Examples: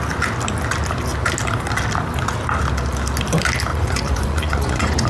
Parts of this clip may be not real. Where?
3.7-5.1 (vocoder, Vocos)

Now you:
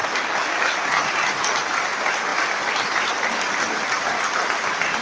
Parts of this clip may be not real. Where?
none

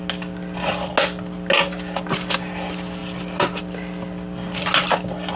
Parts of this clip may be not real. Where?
none